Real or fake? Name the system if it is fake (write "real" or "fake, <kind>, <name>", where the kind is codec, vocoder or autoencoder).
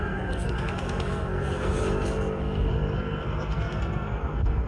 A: fake, codec, SNAC